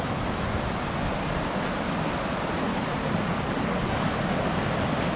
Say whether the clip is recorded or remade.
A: recorded